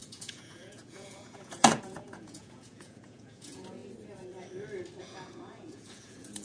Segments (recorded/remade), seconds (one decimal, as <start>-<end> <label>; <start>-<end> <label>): 0.0-3.8 remade; 3.8-5.0 recorded; 5.0-6.4 remade